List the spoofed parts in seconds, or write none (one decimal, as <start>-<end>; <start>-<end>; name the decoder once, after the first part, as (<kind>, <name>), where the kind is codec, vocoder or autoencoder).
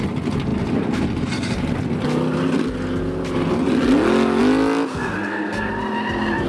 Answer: 4.9-5.7 (codec, SNAC)